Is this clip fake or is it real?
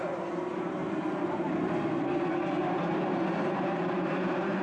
fake